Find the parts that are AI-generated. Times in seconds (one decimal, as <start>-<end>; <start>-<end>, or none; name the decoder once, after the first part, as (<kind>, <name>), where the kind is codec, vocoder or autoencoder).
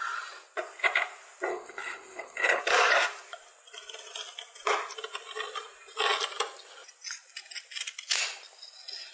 1.5-2.6 (codec, HILCodec)